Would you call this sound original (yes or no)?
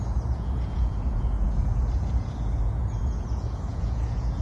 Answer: no